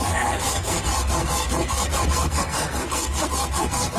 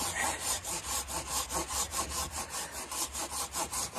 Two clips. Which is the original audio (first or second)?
second